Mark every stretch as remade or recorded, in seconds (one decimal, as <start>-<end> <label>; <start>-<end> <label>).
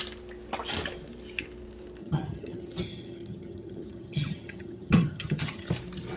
0.0-2.0 recorded; 2.0-5.7 remade; 5.7-6.2 recorded